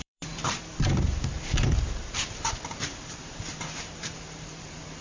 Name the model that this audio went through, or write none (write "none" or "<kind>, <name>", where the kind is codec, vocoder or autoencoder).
vocoder, BigVGAN v2